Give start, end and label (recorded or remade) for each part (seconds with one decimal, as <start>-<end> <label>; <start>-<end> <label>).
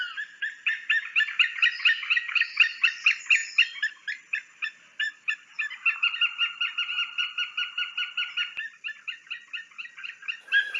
0.0-10.8 recorded